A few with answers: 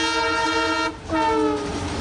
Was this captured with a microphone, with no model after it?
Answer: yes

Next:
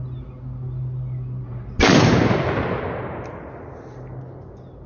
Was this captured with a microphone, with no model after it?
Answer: yes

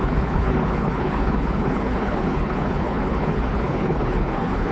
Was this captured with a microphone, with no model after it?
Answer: no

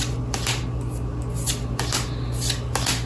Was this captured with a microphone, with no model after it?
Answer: yes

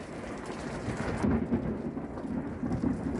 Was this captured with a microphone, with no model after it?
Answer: yes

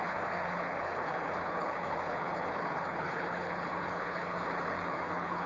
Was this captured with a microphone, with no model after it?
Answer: no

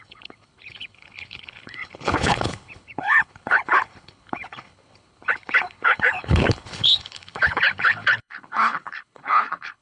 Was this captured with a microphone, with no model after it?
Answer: no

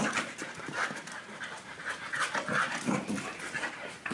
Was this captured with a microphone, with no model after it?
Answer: yes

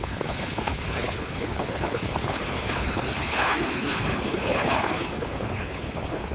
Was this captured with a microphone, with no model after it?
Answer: no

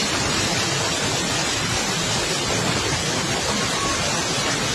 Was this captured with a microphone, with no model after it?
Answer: yes